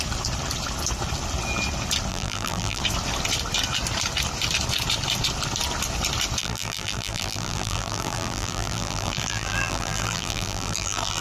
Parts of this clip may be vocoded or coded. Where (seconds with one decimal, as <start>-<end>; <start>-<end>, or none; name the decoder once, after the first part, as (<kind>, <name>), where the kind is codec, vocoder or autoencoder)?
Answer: 2.1-2.8 (vocoder, BigVGAN v2); 6.4-11.2